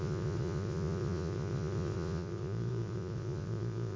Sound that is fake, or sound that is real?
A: fake